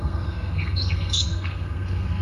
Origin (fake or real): fake